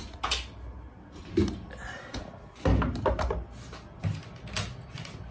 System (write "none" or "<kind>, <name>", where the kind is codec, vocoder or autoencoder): none